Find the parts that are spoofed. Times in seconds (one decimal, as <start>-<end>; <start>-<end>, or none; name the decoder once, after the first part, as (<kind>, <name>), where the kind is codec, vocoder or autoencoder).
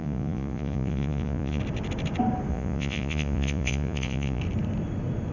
0.0-1.6 (vocoder, Vocos); 2.5-4.4